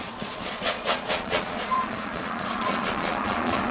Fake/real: fake